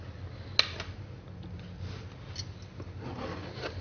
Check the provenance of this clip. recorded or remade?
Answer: recorded